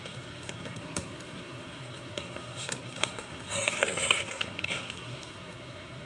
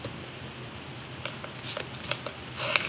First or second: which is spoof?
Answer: first